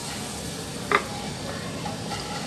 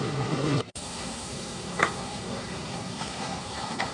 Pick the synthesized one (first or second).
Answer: second